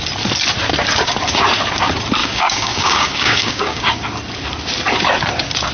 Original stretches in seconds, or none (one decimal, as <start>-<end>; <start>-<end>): 0.0-2.2; 3.9-5.7